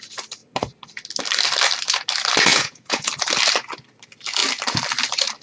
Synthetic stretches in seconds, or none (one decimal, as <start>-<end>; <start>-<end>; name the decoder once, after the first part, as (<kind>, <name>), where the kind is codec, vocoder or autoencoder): 2.5-3.1 (vocoder, Vocos)